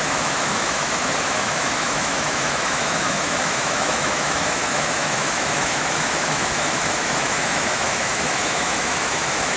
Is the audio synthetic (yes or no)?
yes